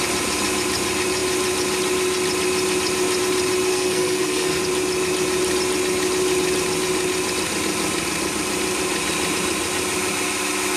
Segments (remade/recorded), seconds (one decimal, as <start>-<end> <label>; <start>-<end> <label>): 0.0-3.7 recorded; 3.7-4.6 remade; 4.6-10.8 recorded